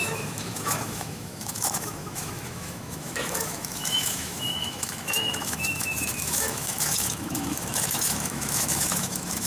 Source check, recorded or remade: remade